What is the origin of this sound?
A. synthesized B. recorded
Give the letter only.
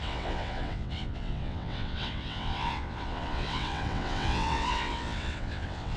A